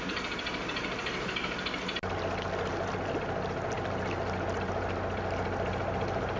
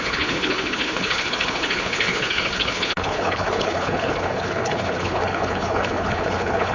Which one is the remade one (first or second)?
second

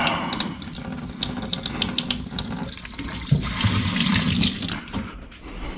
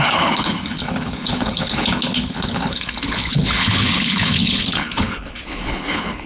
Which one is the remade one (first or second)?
second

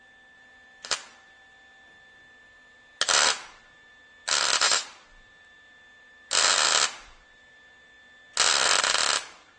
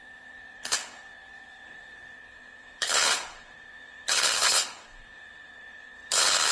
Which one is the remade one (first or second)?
second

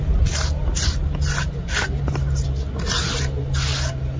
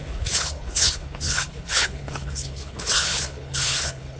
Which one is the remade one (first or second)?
second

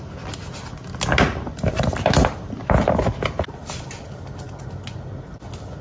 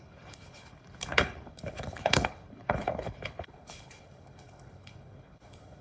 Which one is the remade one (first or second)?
second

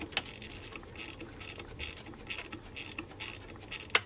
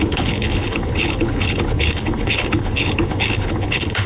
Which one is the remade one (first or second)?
second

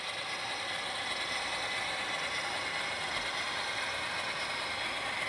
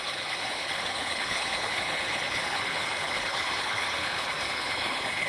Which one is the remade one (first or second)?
second